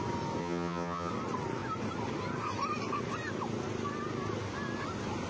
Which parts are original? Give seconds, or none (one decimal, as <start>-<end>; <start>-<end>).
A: 0.0-0.4; 1.1-5.3